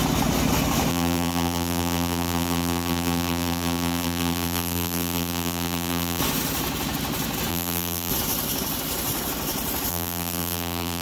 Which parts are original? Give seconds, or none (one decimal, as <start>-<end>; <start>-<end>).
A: 0.0-0.9; 6.2-7.5; 8.1-9.9